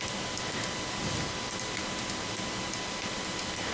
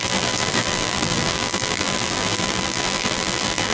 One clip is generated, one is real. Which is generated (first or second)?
second